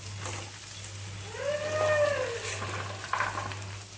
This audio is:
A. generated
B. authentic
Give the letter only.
B